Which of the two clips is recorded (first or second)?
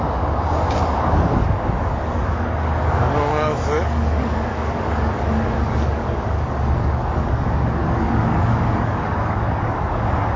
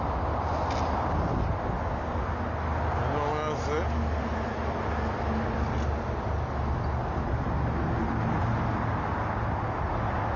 second